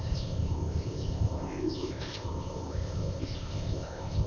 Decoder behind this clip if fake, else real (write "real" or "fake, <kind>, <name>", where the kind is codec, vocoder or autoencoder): fake, codec, ZipCodec